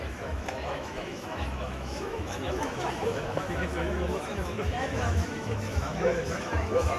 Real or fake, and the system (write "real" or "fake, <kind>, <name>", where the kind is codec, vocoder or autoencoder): fake, autoencoder, DAC-VAE